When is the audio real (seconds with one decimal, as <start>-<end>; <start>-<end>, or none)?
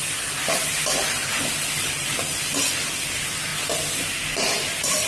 0.0-5.1